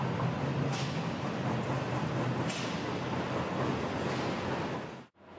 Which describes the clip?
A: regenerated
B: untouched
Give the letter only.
B